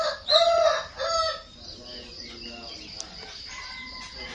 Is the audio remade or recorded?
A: recorded